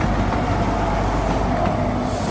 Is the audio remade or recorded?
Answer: recorded